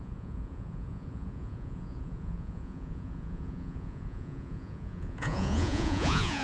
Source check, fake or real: fake